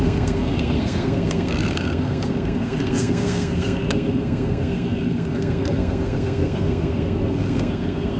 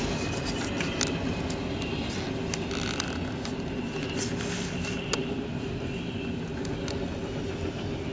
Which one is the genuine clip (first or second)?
second